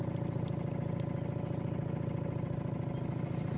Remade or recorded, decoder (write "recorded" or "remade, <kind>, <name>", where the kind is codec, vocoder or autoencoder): recorded